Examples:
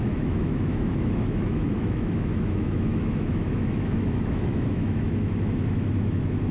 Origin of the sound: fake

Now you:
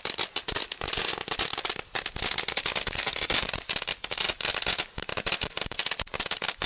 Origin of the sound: real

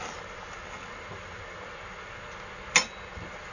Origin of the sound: real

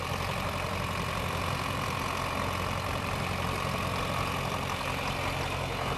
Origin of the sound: real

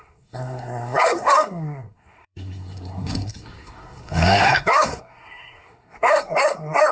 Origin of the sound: fake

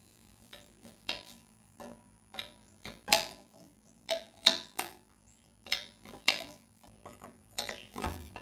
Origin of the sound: fake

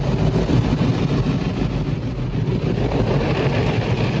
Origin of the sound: real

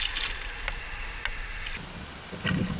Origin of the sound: real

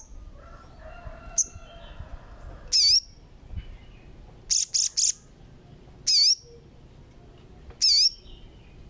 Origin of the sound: real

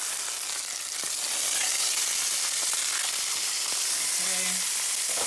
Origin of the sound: real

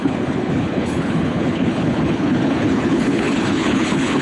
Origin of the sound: fake